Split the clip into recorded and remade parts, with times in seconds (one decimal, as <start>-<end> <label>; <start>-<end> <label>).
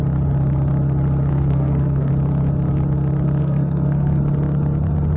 0.0-1.3 recorded; 1.3-2.1 remade; 2.1-3.4 recorded; 3.4-4.2 remade; 4.2-5.2 recorded